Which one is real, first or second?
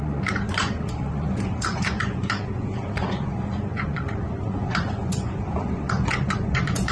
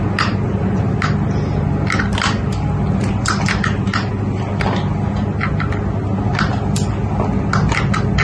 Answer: second